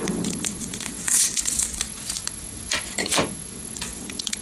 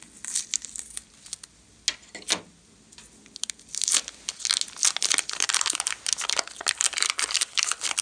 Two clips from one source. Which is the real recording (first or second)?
second